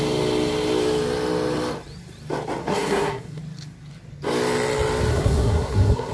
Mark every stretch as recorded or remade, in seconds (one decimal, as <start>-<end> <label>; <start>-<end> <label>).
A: 0.0-2.6 recorded; 2.6-3.4 remade; 3.4-5.1 recorded; 5.1-6.1 remade